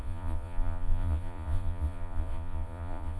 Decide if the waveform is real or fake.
fake